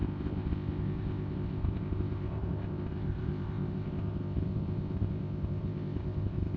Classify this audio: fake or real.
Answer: fake